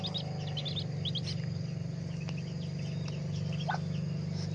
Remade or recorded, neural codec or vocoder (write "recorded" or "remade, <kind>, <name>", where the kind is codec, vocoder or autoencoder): recorded